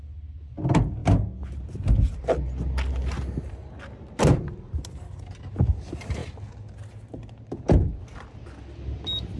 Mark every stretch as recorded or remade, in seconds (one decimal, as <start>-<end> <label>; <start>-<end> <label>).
0.0-9.4 recorded